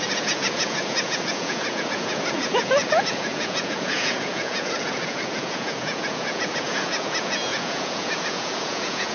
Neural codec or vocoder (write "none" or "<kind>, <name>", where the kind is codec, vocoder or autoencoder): vocoder, Vocos